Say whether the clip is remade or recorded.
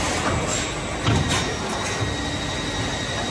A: recorded